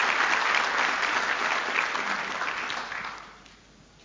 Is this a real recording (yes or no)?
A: yes